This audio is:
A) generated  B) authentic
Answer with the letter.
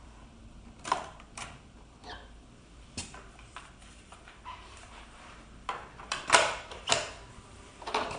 A